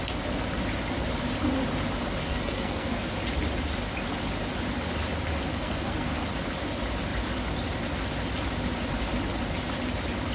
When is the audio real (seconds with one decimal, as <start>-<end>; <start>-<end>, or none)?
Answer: 0.0-2.3; 3.1-5.5; 6.2-10.3